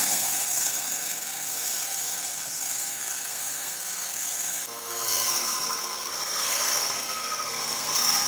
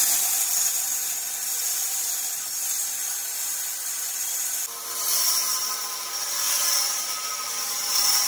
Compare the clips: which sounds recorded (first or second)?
second